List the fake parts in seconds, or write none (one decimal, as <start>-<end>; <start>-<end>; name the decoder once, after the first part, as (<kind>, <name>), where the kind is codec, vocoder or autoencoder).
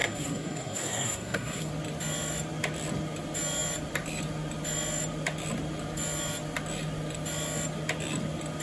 0.0-1.7 (codec, SNAC)